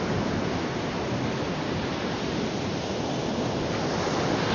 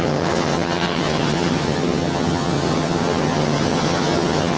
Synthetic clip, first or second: second